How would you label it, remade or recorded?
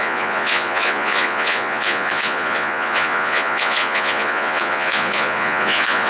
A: remade